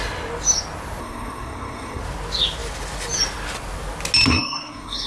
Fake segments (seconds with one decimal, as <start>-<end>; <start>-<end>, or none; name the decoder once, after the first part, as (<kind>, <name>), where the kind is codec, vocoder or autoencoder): 1.0-2.0 (codec, SNAC); 4.3-5.1